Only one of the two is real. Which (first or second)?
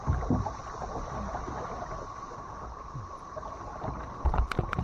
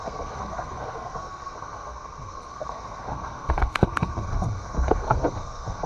first